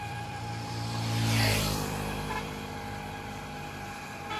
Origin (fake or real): fake